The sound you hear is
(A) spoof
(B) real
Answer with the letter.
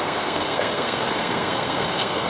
A